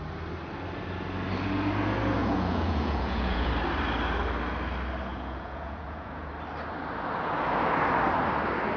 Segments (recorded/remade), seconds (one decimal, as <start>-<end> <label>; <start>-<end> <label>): 0.0-2.2 recorded; 2.2-3.5 remade; 3.5-5.1 recorded; 5.1-6.3 remade; 6.3-8.8 recorded